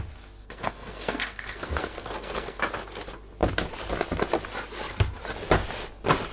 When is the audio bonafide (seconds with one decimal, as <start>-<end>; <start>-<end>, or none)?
0.0-0.4; 2.6-6.3